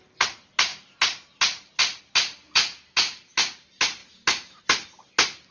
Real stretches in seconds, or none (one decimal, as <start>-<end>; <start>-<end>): 0.0-2.4; 3.3-5.5